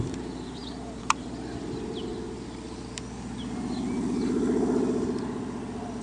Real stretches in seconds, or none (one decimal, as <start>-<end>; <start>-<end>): 2.1-6.0